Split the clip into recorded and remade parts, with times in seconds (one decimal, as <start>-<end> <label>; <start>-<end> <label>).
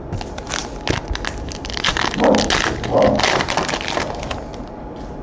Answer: 0.0-5.2 recorded